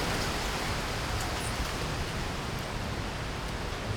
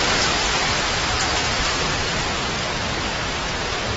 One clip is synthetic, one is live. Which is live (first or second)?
first